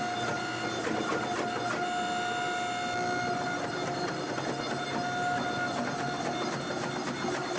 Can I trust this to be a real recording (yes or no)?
yes